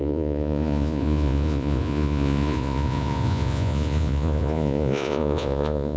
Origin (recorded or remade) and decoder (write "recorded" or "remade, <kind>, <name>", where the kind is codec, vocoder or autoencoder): remade, vocoder, Vocos